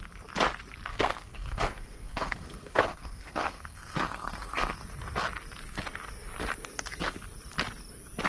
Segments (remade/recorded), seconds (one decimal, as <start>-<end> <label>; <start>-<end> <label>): 0.0-0.9 recorded; 0.9-4.7 remade; 4.7-8.3 recorded